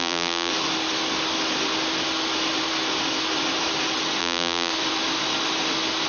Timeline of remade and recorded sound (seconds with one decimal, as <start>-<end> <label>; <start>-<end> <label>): 0.0-0.5 remade; 0.5-4.2 recorded; 4.2-4.7 remade; 4.7-6.1 recorded